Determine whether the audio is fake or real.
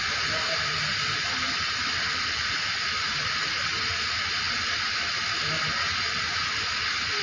real